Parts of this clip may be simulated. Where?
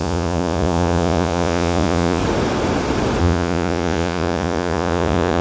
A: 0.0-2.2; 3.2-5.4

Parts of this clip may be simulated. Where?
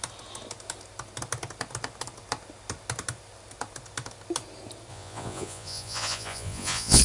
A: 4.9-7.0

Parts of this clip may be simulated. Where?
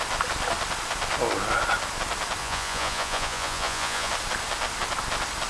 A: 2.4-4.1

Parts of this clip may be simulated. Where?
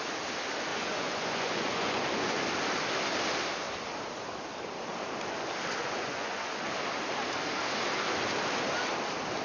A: 0.7-2.4; 5.8-6.5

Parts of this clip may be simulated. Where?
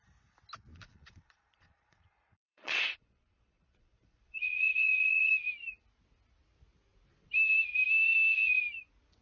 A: 0.7-5.3